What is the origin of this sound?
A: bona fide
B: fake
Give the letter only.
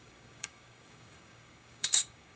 B